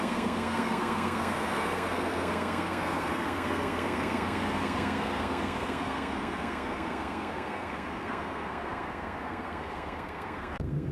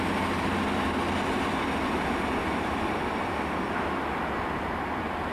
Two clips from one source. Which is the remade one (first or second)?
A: first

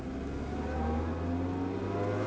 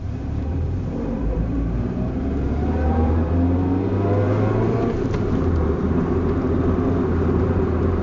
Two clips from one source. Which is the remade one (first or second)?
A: second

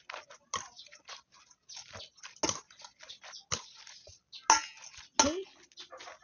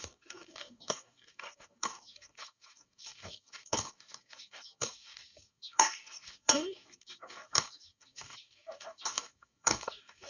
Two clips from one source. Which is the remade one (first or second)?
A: second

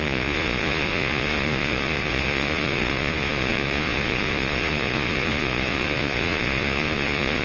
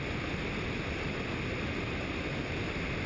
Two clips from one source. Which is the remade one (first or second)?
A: first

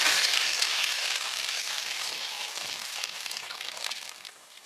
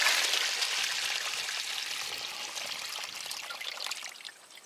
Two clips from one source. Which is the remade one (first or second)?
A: first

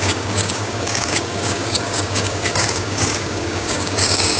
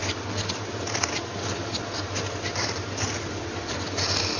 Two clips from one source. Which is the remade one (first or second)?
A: first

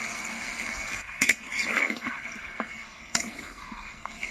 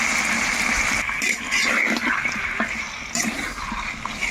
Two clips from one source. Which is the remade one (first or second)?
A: first